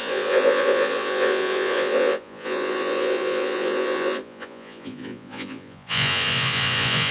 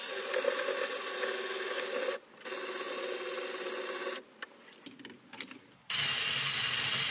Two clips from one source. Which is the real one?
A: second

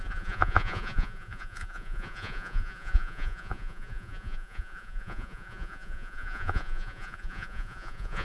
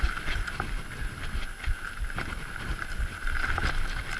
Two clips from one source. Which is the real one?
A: second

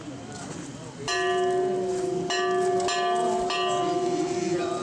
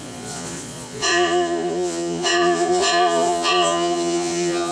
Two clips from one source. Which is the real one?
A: first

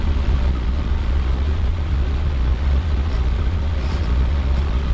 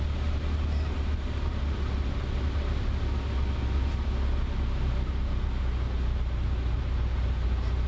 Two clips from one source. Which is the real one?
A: second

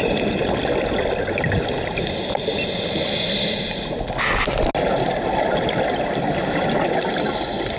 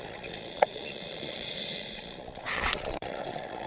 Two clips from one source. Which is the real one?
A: first